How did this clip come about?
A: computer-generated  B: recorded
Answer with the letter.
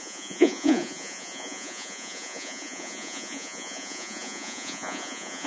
A